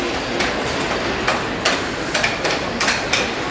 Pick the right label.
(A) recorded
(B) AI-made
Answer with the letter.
A